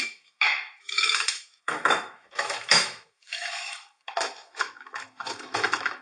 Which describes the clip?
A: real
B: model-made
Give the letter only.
B